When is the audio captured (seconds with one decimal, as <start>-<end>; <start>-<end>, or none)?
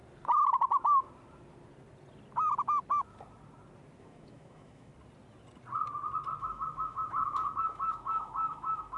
0.0-4.0; 4.9-6.4